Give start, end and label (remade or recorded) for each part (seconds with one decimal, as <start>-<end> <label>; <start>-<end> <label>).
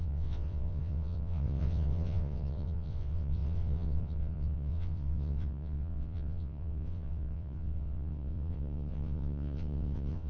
0.0-10.3 remade